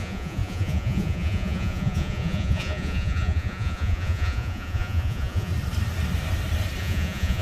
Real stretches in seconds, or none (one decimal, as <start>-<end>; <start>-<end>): 5.5-6.8